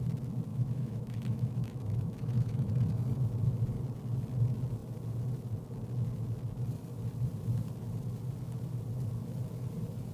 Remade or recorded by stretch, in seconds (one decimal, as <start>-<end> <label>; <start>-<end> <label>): 0.0-0.5 recorded; 0.5-2.7 remade; 2.7-10.1 recorded